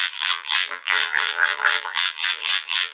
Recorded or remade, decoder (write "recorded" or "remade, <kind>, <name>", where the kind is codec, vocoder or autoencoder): remade, vocoder, BigVGAN v2